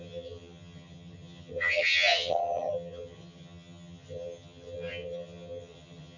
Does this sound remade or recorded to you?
remade